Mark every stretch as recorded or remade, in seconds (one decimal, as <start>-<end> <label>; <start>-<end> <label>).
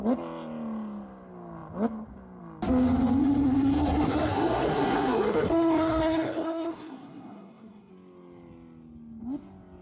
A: 0.0-3.2 recorded; 3.2-7.9 remade; 7.9-9.8 recorded